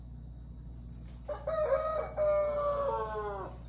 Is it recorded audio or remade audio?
recorded